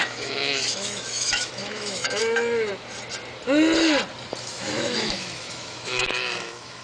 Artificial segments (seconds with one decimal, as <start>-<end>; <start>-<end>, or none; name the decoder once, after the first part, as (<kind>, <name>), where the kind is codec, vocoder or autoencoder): 0.0-2.7 (autoencoder, DAC-VAE); 4.4-6.8